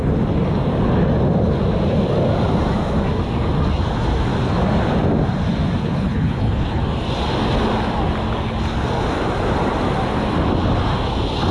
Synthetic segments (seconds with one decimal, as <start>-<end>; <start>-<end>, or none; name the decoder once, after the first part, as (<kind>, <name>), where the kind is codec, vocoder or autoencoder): 5.8-6.8 (codec, HILCodec)